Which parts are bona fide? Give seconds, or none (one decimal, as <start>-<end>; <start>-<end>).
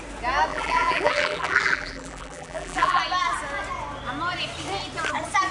0.0-0.5; 3.0-5.5